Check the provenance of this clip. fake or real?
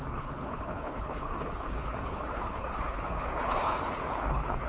fake